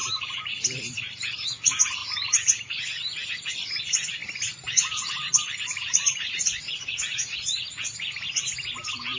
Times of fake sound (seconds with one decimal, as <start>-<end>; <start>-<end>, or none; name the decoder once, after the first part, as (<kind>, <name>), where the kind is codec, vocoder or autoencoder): 0.0-0.8 (vocoder, BigVGAN v2); 4.2-8.4